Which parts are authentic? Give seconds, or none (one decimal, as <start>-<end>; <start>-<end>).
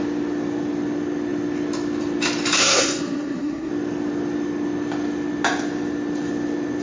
0.0-2.6; 3.7-6.8